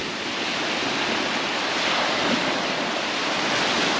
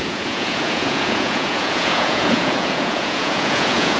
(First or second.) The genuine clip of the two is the first